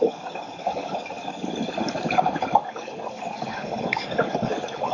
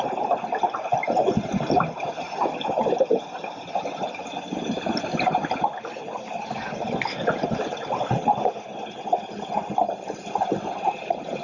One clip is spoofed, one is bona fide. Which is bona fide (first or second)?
second